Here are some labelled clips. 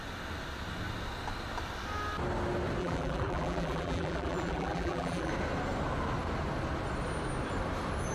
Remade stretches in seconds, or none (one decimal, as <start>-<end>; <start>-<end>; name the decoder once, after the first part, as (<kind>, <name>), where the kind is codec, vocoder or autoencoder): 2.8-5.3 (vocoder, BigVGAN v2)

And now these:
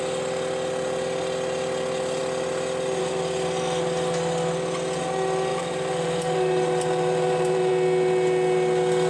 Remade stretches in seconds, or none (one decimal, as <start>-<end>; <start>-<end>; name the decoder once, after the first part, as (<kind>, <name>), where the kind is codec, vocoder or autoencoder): 5.5-7.7 (vocoder, BigVGAN v2)

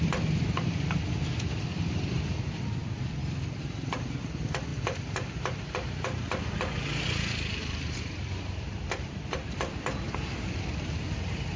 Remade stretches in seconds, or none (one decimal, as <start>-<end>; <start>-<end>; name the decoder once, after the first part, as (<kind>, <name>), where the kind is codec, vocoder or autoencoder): 4.7-6.2 (vocoder, BigVGAN v2); 7.6-9.7